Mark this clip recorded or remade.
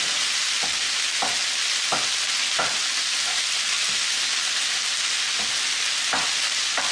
recorded